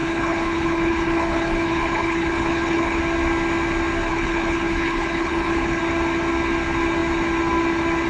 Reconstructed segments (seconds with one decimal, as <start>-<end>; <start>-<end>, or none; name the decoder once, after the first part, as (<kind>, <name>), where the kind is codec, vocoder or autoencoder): 0.0-3.0 (codec, HILCodec); 4.1-5.8